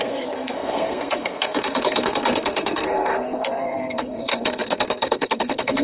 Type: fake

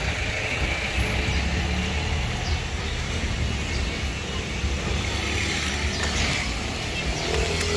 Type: real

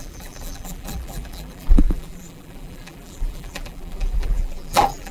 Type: fake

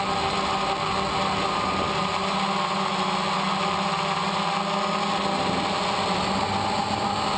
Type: real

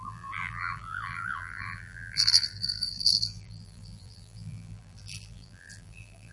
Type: fake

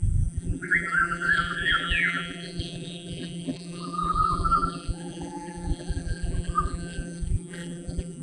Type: fake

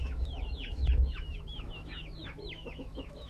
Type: fake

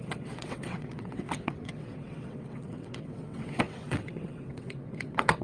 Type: fake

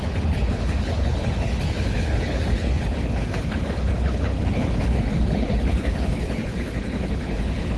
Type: fake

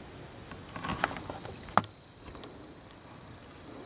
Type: real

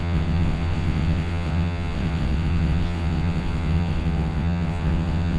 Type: fake